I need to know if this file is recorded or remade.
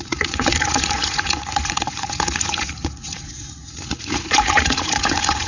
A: remade